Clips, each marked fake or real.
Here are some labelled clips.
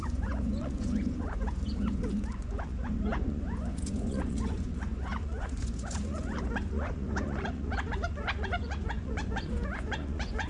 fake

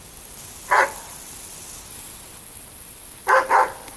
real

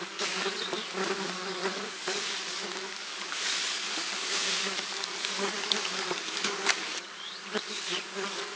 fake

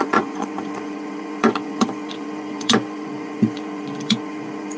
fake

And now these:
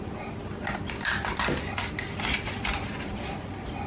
real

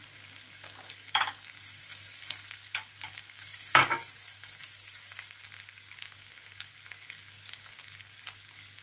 fake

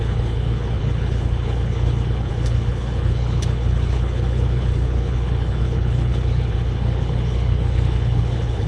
fake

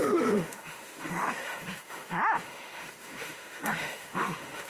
fake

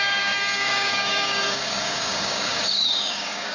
fake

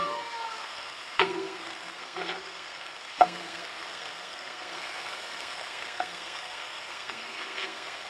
fake